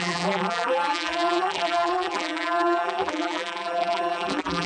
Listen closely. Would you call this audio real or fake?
fake